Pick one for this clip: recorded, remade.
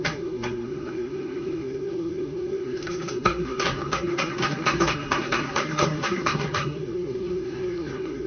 remade